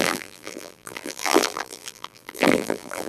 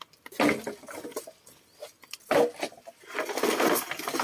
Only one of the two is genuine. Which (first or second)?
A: second